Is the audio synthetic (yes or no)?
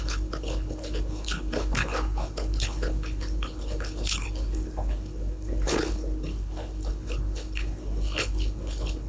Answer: yes